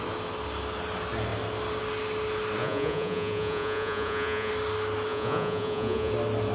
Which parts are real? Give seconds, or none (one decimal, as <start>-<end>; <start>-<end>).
0.0-2.6; 4.5-5.1; 6.1-6.5